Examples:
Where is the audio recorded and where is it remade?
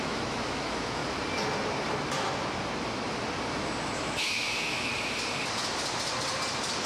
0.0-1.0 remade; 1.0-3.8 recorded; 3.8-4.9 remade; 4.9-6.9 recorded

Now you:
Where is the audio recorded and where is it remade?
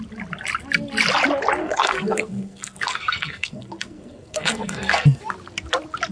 0.0-1.6 recorded; 1.6-5.2 remade; 5.2-6.1 recorded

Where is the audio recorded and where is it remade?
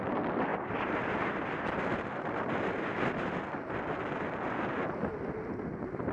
0.0-6.1 recorded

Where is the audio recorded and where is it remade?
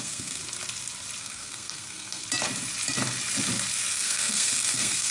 0.0-0.4 remade; 0.4-1.2 recorded; 1.2-2.2 remade; 2.2-3.9 recorded; 3.9-5.1 remade